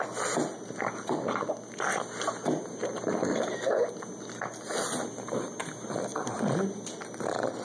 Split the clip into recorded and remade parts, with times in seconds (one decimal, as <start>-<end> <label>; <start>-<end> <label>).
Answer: 0.0-7.6 recorded

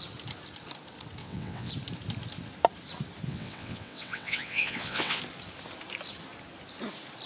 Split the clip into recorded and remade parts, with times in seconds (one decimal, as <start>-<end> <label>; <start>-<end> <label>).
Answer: 0.0-1.2 recorded; 1.2-1.7 remade; 1.7-3.3 recorded; 3.3-5.2 remade; 5.2-7.3 recorded

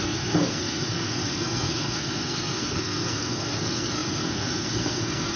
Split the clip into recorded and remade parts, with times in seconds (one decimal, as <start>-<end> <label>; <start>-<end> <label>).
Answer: 0.0-5.4 remade

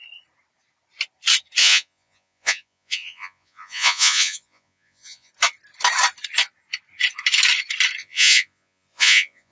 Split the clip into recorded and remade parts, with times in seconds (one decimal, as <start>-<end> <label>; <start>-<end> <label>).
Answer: 0.0-1.6 recorded; 1.6-5.3 remade; 5.3-8.0 recorded; 8.0-9.5 remade

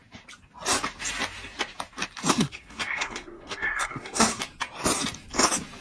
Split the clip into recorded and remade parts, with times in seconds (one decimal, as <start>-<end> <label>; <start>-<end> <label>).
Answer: 0.0-2.3 recorded; 2.3-4.4 remade; 4.4-5.8 recorded

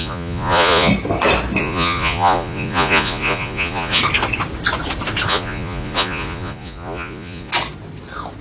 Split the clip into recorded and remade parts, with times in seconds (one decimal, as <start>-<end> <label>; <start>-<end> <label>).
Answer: 0.0-0.9 remade; 0.9-1.6 recorded; 1.6-4.0 remade; 4.0-5.3 recorded; 5.3-7.5 remade; 7.5-8.4 recorded

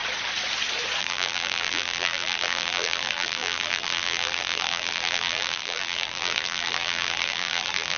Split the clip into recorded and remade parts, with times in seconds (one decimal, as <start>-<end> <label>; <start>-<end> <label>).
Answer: 0.0-1.0 recorded; 1.0-8.0 remade